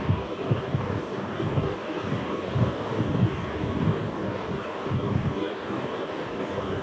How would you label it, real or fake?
fake